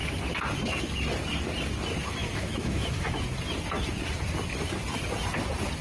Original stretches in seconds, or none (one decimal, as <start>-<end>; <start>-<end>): 0.0-2.2; 3.2-5.8